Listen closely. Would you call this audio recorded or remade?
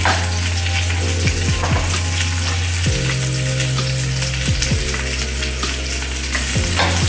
recorded